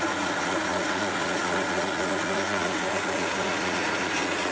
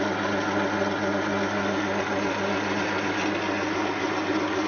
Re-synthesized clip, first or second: first